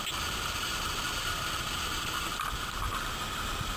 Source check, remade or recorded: recorded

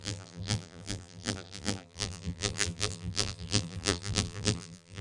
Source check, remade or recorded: remade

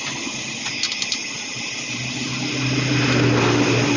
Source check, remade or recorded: recorded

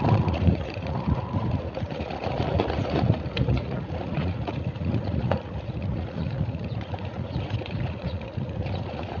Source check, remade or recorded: remade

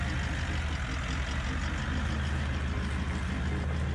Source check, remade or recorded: recorded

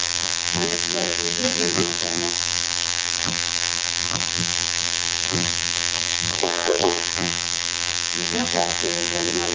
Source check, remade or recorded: remade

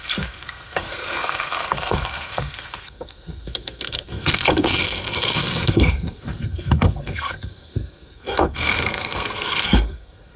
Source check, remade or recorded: remade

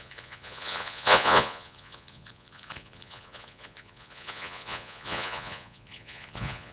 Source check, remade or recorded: remade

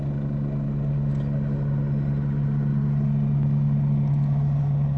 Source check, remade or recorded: recorded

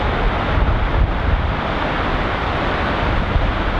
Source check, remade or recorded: recorded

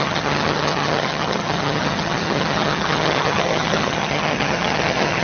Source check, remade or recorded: remade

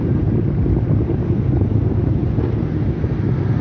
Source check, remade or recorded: recorded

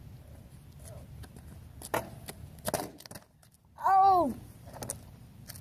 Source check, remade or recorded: recorded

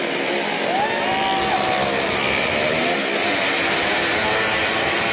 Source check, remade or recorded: recorded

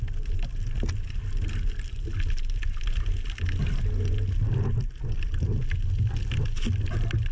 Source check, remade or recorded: recorded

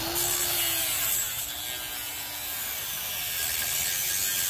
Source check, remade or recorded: recorded